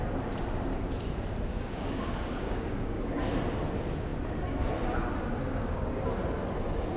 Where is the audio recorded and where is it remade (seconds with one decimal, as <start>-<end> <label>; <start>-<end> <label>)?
0.0-1.5 recorded; 1.5-3.3 remade; 3.3-5.5 recorded; 5.5-6.0 remade; 6.0-7.0 recorded